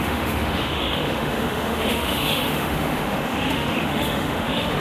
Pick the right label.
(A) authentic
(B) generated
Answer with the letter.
B